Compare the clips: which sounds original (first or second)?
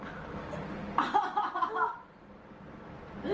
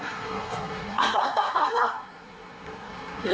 first